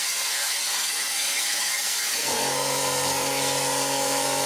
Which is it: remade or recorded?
remade